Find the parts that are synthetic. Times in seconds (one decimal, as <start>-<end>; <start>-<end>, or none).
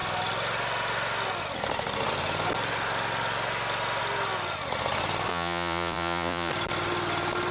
5.3-6.5